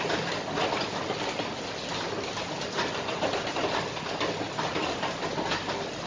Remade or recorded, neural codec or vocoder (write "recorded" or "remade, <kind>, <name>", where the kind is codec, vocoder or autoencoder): recorded